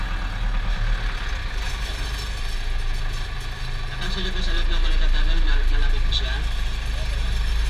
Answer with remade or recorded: recorded